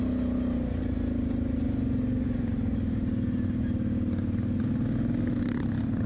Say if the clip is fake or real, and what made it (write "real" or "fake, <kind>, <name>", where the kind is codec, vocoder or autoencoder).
real